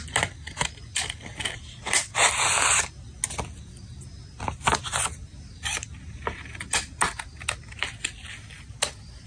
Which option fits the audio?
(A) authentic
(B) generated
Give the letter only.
A